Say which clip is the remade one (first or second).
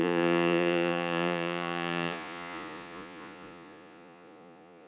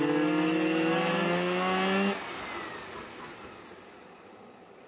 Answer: first